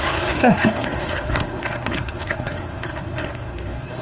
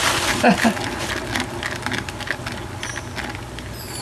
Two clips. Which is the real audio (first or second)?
second